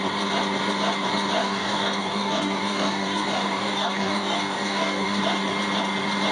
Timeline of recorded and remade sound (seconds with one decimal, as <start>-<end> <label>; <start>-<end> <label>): 0.0-1.4 recorded; 1.4-5.2 remade; 5.2-6.3 recorded